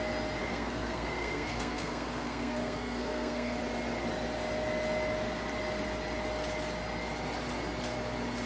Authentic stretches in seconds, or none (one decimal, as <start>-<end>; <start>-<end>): 0.0-0.4; 3.6-8.5